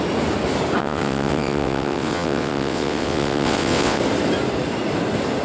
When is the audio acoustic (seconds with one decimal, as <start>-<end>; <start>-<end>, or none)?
0.0-0.8; 4.0-5.4